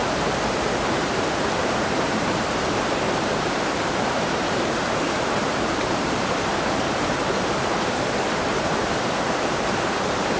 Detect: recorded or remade remade